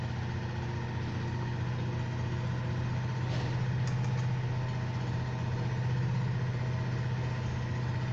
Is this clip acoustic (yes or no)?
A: yes